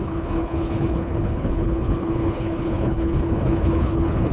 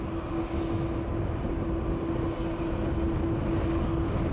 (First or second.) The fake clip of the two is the first